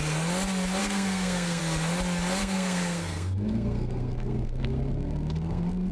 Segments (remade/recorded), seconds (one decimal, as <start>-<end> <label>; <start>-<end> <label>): 0.0-0.8 recorded; 0.8-1.6 remade; 1.6-2.4 recorded; 2.4-5.9 remade